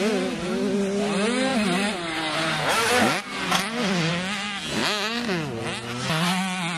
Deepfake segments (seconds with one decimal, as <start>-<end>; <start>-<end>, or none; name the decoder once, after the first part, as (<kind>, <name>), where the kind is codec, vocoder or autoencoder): none